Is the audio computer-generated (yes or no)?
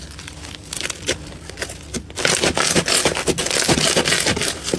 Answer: no